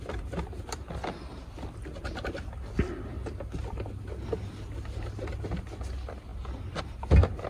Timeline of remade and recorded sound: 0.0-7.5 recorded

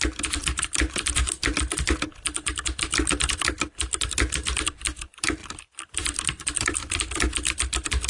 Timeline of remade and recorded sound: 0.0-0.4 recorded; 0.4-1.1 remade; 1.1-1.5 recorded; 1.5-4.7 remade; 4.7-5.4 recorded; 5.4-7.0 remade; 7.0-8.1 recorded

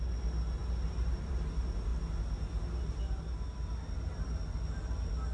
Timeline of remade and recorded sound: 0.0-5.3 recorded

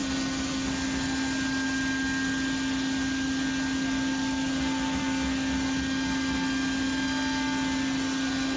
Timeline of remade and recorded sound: 0.0-8.6 recorded

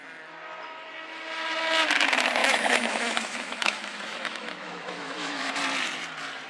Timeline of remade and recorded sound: 0.0-2.4 recorded; 2.4-5.6 remade; 5.6-6.5 recorded

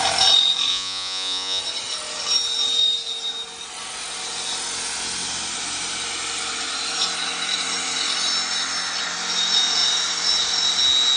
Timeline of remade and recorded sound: 0.0-0.7 recorded; 0.7-1.6 remade; 1.6-11.2 recorded